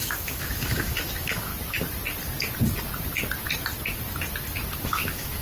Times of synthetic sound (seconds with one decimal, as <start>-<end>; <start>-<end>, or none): 0.0-1.5; 4.7-5.4